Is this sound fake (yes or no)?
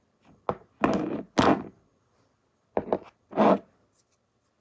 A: no